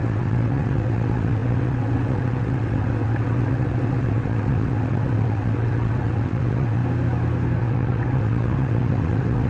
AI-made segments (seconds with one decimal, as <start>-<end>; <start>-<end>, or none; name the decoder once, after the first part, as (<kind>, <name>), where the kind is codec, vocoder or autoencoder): 0.0-6.8 (vocoder, WaveNeXt); 7.6-9.5